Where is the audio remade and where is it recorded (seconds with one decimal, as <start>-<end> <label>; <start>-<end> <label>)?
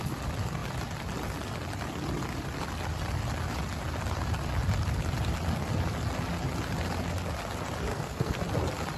0.0-7.9 recorded; 7.9-8.4 remade; 8.4-9.0 recorded